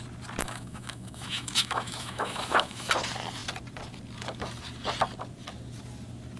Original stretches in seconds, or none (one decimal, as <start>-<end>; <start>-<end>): 0.0-0.4; 2.9-6.4